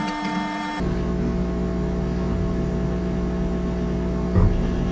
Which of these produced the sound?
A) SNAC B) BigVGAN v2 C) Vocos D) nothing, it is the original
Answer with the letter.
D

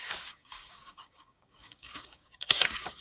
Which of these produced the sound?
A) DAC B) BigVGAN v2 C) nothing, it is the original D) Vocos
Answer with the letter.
A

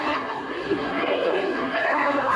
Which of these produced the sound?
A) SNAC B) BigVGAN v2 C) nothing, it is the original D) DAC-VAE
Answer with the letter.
A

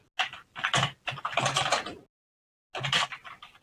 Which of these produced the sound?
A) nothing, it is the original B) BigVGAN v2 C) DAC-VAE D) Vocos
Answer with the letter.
A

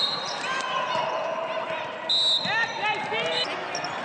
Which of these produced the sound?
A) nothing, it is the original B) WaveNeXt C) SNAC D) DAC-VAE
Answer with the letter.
A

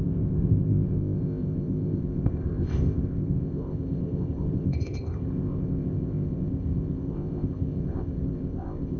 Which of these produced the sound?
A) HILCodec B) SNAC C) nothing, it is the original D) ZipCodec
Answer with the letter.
D